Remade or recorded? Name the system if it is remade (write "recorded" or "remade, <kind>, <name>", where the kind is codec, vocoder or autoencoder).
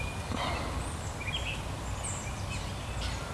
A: recorded